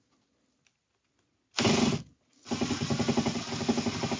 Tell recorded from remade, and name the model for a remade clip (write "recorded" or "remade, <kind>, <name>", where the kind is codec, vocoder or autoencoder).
recorded